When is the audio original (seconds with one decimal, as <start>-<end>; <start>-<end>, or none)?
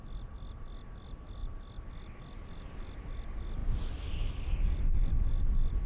0.0-5.9